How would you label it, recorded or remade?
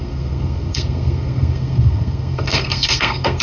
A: remade